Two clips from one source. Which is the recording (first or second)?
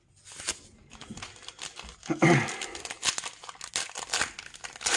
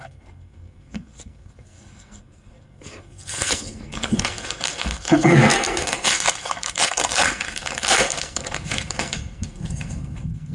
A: first